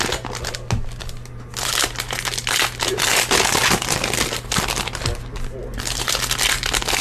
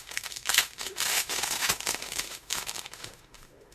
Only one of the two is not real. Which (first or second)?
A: second